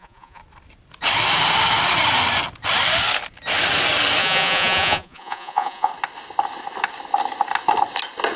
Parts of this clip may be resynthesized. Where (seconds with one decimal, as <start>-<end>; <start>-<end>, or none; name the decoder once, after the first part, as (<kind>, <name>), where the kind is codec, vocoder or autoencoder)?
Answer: 0.0-0.4 (vocoder, Vocos); 4.2-5.9